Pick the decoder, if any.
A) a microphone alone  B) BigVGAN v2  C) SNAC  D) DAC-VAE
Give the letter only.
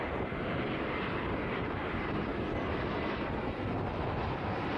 A